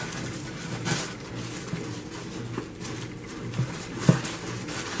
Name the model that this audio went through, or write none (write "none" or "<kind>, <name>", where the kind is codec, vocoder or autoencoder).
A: none